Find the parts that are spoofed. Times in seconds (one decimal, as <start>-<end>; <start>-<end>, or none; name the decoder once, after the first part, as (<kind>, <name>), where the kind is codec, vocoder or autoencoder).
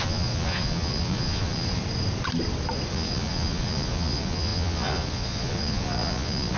0.0-1.8 (vocoder, Vocos); 2.9-6.6